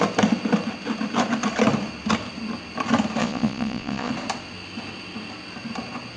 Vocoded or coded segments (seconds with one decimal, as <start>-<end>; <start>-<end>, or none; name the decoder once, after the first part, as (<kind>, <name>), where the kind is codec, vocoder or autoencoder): 3.2-4.1 (vocoder, Vocos)